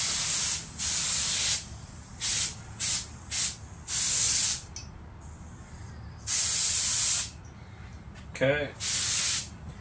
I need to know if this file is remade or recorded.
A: recorded